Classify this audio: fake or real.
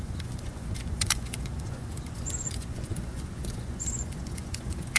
fake